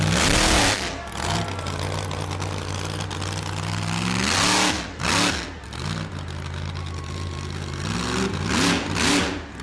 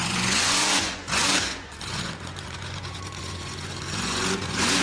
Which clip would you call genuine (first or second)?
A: first